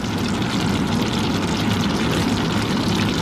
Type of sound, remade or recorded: recorded